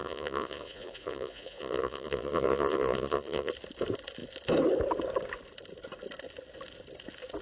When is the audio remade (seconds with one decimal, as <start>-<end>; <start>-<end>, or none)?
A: 0.0-3.5